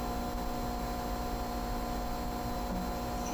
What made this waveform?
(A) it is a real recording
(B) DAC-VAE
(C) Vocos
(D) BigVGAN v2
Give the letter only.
A